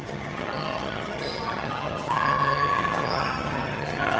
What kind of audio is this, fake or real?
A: fake